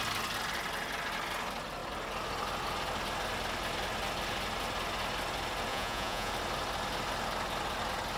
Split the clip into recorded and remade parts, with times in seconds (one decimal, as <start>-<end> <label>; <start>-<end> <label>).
0.0-5.7 recorded; 5.7-6.3 remade; 6.3-8.2 recorded